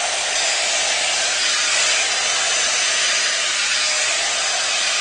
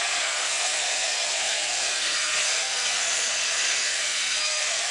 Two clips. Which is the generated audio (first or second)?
second